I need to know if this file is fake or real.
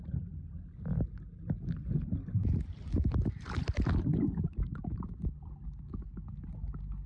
real